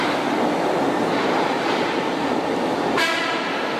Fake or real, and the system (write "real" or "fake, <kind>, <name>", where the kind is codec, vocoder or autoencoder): real